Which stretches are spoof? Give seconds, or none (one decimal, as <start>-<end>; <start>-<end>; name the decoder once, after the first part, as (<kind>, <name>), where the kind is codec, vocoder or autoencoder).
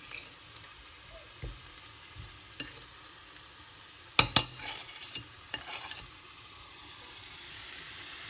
0.7-1.4 (vocoder, BigVGAN v2); 4.8-7.5